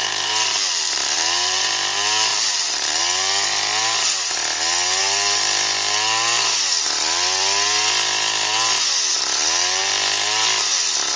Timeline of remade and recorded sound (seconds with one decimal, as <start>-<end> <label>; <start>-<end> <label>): 0.0-1.7 remade; 1.7-2.3 recorded; 2.3-3.0 remade; 3.0-11.2 recorded